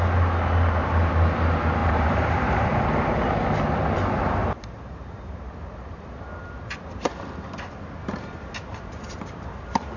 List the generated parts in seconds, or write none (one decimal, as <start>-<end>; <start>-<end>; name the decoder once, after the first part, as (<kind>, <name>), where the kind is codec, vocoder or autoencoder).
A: 1.8-3.0 (vocoder, BigVGAN v2); 4.4-5.5; 8.7-10.0